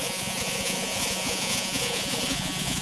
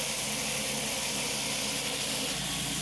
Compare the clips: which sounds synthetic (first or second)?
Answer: first